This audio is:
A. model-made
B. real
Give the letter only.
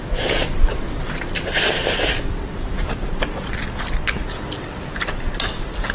A